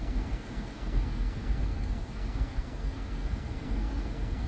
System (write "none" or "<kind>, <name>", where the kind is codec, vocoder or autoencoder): codec, SNAC